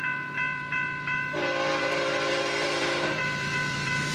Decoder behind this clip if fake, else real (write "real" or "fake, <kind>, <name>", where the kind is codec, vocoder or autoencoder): fake, vocoder, BigVGAN v2